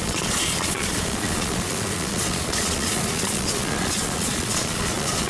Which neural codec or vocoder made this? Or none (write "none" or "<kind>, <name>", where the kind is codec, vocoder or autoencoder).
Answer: vocoder, Vocos